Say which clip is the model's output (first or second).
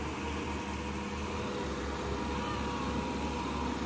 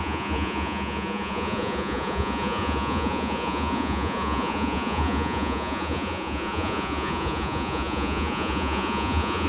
second